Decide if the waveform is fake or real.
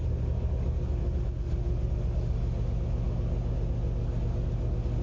real